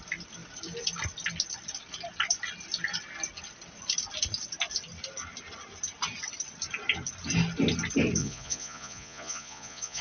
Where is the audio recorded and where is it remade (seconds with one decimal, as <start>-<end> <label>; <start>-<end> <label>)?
0.0-8.2 recorded; 8.2-10.0 remade